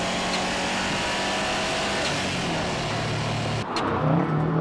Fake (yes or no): no